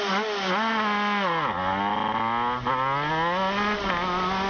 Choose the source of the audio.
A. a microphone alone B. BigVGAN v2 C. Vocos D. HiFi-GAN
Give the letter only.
A